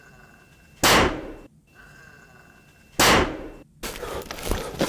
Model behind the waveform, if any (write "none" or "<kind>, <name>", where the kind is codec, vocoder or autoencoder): none